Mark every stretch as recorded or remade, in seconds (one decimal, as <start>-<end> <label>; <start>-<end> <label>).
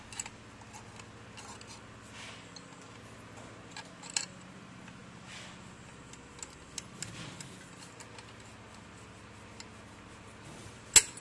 0.0-11.2 recorded